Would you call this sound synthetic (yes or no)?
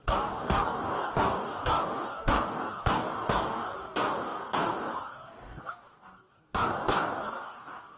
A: yes